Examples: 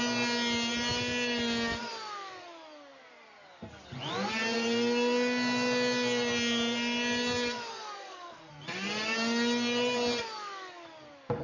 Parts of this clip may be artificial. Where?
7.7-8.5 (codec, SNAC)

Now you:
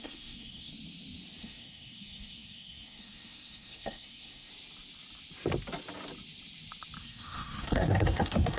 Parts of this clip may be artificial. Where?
0.0-0.7 (codec, SNAC); 1.4-4.5; 7.0-8.6

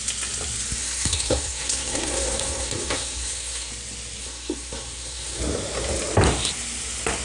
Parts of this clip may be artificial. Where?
0.8-3.7 (codec, SNAC); 4.2-5.4

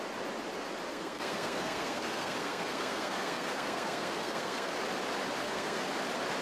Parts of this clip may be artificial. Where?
0.9-4.7 (codec, SNAC); 5.4-5.9

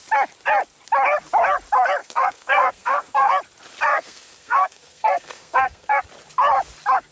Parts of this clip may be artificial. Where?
2.0-3.3 (codec, SNAC); 3.9-6.0

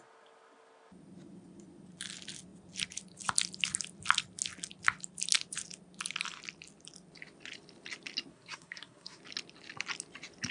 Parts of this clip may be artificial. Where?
8.3-9.2 (codec, SNAC)

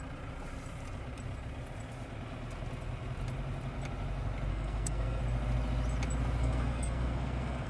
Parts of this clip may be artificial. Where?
4.5-5.2 (codec, SNAC); 6.4-7.7

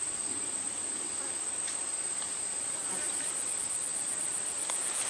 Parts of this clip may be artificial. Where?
none